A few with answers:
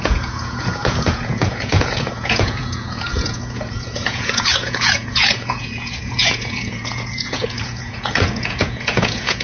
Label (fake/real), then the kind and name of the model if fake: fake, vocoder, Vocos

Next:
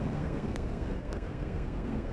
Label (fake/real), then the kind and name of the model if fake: fake, codec, SNAC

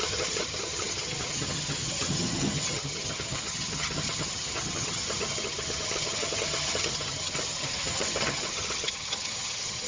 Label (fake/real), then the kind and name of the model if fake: fake, vocoder, HiFi-GAN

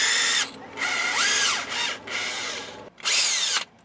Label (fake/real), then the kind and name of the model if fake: real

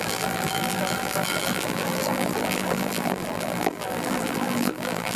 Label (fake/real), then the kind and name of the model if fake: fake, vocoder, BigVGAN v2